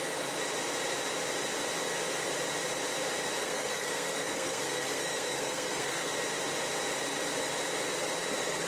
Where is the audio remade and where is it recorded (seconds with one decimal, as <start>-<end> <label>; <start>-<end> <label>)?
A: 0.0-3.4 recorded; 3.4-6.1 remade; 6.1-8.7 recorded